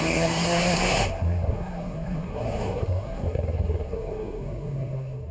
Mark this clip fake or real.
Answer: fake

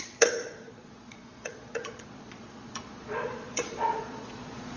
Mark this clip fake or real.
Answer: fake